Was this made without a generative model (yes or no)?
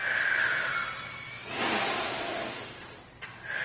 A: yes